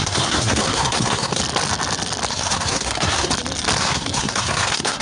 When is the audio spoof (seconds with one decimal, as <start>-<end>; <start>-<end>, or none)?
0.0-1.4; 2.3-3.3; 3.8-5.0